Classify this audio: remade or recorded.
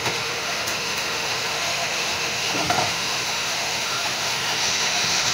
remade